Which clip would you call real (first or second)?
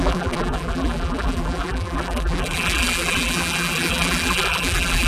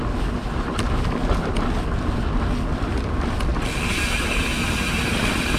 second